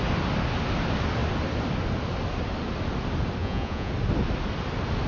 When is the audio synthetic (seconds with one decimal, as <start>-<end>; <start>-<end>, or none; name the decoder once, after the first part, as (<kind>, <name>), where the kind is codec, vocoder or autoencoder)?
3.4-3.9 (vocoder, Vocos)